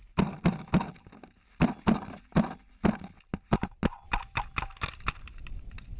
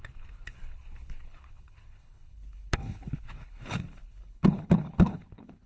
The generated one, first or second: second